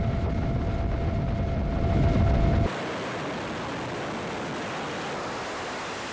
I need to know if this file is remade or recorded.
recorded